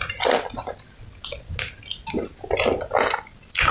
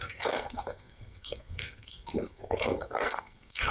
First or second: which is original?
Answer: first